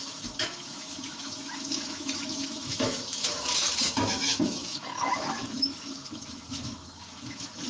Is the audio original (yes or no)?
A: no